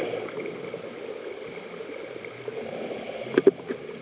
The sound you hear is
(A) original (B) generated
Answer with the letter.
A